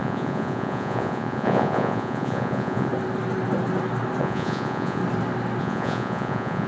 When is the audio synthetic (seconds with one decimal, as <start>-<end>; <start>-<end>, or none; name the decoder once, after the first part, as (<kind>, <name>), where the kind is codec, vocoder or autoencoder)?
0.0-2.9 (vocoder, Vocos); 4.2-5.0; 5.6-6.7